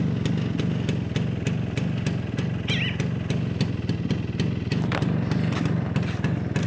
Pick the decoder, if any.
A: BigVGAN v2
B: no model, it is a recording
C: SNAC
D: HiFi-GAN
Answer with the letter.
B